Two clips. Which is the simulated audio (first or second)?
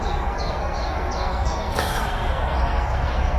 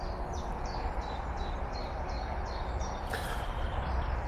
first